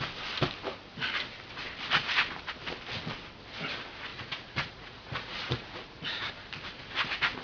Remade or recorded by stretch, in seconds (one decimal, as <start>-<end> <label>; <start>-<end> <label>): 0.0-4.1 recorded; 4.1-6.3 remade; 6.3-7.4 recorded